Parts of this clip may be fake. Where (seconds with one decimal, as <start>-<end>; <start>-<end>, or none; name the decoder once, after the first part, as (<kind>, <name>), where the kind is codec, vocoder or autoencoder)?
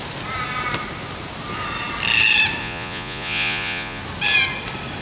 2.6-4.0 (vocoder, Vocos)